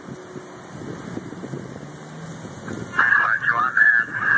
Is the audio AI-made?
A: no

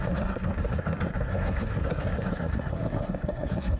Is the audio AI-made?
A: yes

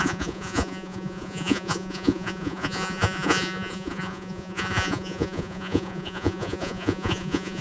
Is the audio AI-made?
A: yes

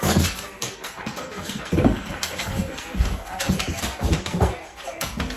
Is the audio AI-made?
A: yes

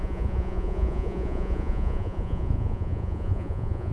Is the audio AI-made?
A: yes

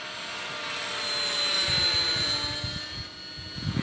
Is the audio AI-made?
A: no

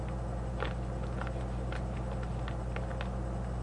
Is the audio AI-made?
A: no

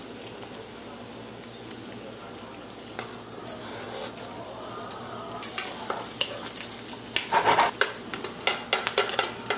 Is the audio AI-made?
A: no